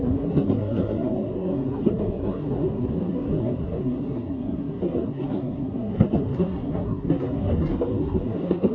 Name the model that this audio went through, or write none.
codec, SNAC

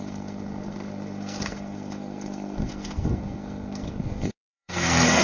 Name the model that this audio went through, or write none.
codec, SNAC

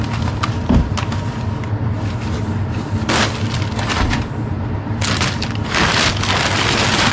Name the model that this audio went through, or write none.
none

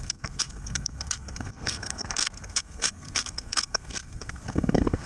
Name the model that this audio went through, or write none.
codec, SNAC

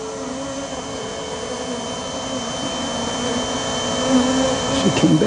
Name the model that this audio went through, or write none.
none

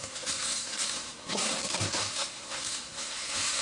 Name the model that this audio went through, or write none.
codec, SNAC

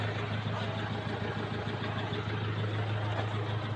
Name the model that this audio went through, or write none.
none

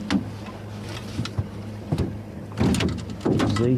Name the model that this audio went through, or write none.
none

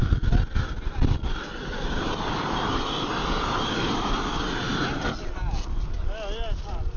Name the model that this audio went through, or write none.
none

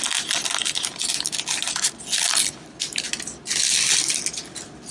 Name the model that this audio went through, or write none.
none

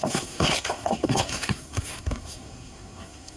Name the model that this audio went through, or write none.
codec, SNAC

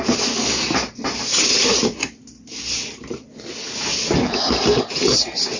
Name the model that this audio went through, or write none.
none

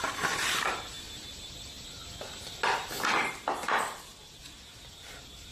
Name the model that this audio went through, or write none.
none